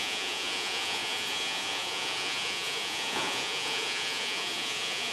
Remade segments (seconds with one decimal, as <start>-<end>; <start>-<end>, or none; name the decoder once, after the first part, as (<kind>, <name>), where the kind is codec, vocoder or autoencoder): 0.0-5.1 (vocoder, Vocos)